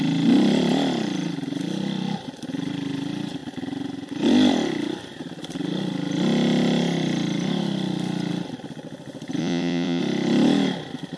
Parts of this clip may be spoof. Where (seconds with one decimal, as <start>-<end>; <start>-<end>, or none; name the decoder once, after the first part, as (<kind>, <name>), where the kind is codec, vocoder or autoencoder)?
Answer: 9.4-10.0 (vocoder, Vocos)